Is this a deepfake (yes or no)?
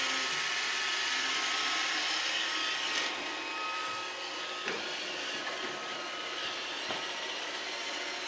no